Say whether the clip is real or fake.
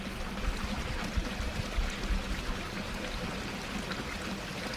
real